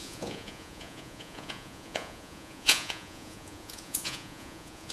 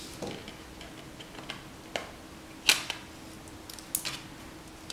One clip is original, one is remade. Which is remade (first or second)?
first